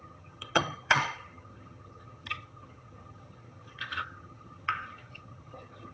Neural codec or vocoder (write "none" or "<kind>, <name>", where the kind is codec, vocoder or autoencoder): vocoder, HiFi-GAN